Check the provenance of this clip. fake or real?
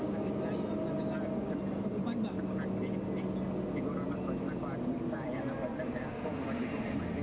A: real